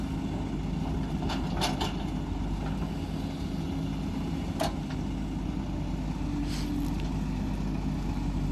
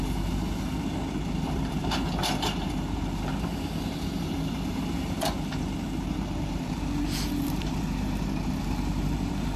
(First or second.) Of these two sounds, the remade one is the second